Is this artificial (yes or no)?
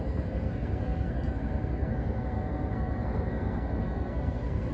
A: yes